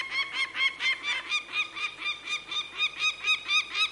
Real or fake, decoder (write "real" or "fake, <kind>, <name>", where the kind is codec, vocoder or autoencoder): real